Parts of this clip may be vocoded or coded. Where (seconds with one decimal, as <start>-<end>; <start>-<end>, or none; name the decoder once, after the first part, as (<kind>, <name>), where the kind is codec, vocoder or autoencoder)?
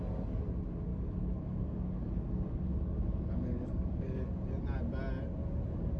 0.9-4.2 (codec, DAC)